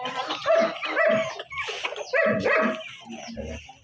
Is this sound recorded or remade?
recorded